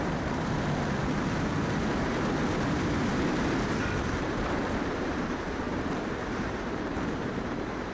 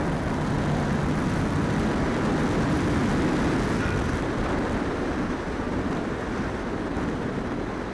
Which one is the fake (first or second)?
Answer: first